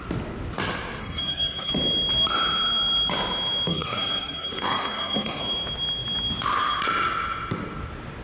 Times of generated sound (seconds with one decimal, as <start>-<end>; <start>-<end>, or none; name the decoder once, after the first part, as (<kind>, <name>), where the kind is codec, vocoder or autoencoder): 1.0-1.7 (codec, SNAC); 3.7-5.4